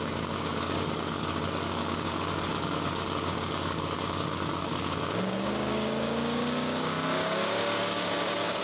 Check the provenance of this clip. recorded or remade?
remade